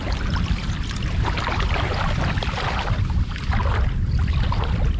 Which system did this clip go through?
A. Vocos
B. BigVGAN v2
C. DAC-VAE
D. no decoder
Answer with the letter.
D